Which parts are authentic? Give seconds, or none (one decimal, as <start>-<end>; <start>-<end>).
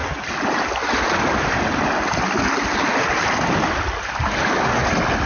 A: 0.0-5.3